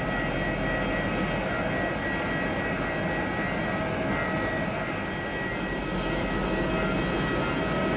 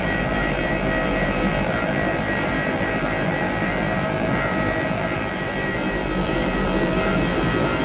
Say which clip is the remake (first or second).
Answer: second